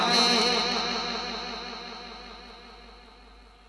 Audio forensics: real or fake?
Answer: real